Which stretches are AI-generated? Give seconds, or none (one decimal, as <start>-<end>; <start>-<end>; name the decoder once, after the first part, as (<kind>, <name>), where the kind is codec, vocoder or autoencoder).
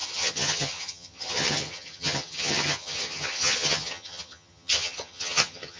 0.0-5.8 (vocoder, HiFi-GAN)